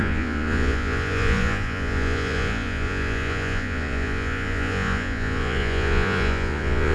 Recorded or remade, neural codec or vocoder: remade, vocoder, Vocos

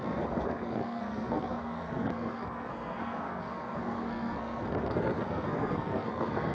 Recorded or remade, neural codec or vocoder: remade, codec, SNAC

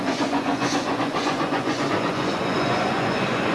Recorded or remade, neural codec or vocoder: remade, vocoder, Vocos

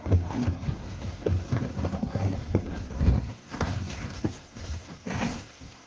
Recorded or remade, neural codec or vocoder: remade, codec, SNAC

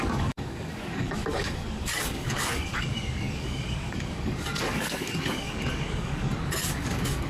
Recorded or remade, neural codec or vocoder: remade, codec, DAC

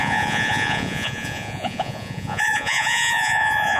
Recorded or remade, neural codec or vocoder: remade, vocoder, Vocos